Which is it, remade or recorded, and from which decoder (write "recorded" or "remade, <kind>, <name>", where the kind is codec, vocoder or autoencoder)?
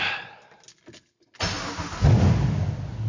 recorded